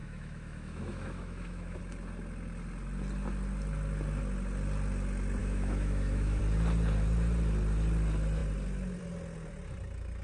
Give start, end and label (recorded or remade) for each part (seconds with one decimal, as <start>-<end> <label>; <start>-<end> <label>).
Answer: 0.0-1.8 remade; 1.8-5.4 recorded; 5.4-6.4 remade; 6.4-10.2 recorded